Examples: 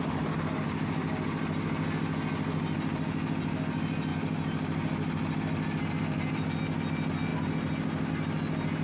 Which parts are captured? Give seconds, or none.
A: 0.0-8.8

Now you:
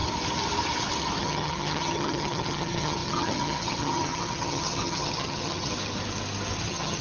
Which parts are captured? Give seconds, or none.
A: 0.0-1.2; 5.7-6.6

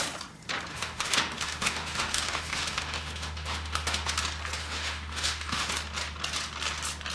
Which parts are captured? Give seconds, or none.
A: 0.0-0.7; 4.1-4.6; 5.7-7.1

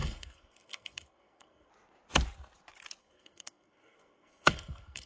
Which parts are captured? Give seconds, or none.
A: 1.7-3.0